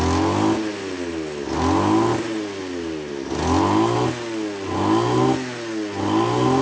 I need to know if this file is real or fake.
real